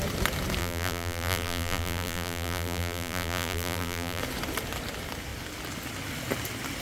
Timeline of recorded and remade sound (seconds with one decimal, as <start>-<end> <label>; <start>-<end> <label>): 0.0-0.6 recorded; 0.6-4.2 remade; 4.2-6.8 recorded